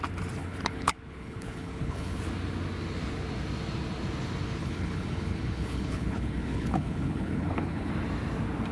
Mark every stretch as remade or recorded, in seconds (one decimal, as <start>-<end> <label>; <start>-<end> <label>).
0.0-0.4 recorded; 0.4-2.2 remade; 2.2-4.6 recorded; 4.6-7.9 remade; 7.9-8.7 recorded